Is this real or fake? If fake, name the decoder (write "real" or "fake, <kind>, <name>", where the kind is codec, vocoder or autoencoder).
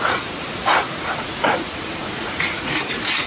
fake, vocoder, Vocos